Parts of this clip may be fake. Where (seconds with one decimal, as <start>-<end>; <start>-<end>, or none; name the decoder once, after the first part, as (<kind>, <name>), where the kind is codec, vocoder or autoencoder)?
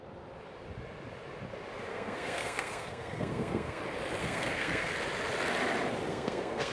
1.9-3.8 (codec, SNAC); 4.2-4.9; 6.1-6.7